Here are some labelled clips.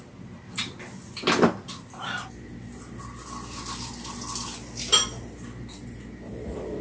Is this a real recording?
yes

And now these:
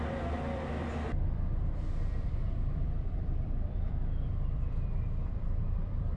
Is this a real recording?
no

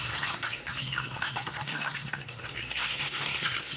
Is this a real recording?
no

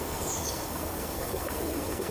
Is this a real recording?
no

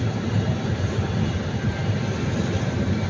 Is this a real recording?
yes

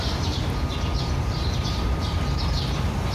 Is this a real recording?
no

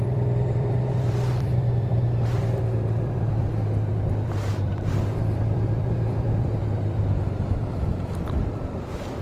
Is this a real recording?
no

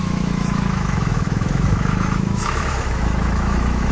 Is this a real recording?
no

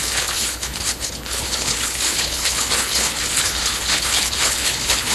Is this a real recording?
no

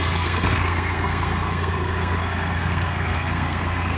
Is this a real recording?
no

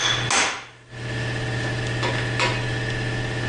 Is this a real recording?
yes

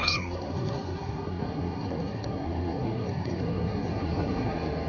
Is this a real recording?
no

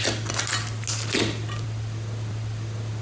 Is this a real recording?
yes